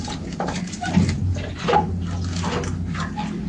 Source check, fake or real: real